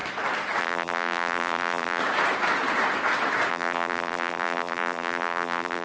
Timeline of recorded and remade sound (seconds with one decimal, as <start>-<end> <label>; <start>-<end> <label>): 0.0-0.6 recorded; 0.6-2.0 remade; 2.0-3.5 recorded; 3.5-5.8 remade